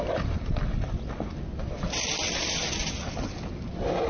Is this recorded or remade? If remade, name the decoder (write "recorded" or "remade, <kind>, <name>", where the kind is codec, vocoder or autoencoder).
recorded